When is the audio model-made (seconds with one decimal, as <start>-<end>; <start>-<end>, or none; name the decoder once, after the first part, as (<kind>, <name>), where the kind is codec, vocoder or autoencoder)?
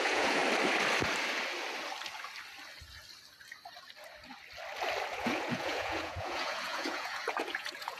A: 0.0-0.4 (vocoder, Vocos); 5.1-8.0